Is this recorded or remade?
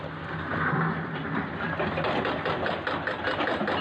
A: recorded